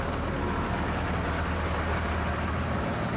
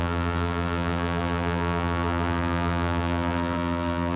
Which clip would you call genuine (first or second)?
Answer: first